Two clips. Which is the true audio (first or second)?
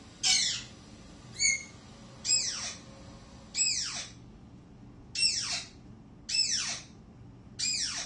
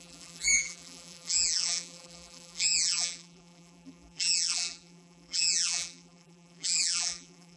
first